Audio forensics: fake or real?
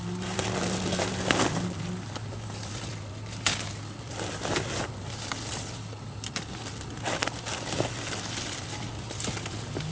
real